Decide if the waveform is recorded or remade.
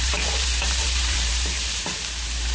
remade